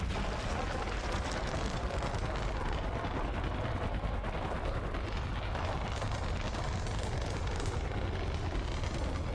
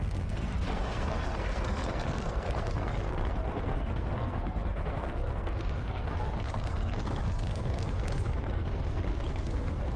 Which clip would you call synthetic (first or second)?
second